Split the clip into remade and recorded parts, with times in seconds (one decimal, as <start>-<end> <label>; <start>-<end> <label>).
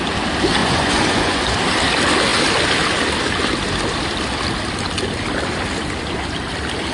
0.0-0.6 recorded; 0.6-1.4 remade; 1.4-6.9 recorded